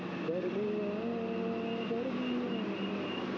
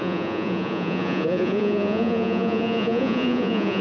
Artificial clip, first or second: second